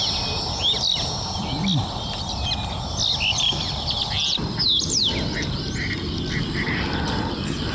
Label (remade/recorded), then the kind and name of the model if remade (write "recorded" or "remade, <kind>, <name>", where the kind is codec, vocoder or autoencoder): recorded